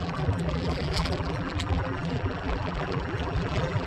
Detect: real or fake fake